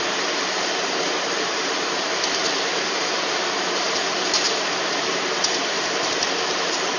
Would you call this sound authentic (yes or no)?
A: no